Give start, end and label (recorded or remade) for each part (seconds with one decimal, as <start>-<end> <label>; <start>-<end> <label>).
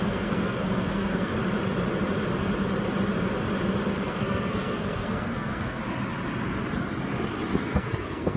0.0-1.3 remade; 1.3-3.9 recorded; 3.9-5.8 remade; 5.8-7.6 recorded; 7.6-8.4 remade